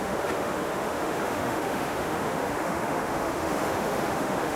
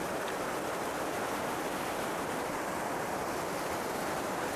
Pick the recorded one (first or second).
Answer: second